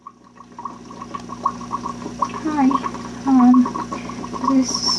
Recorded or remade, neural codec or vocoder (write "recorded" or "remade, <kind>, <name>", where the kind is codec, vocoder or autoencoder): recorded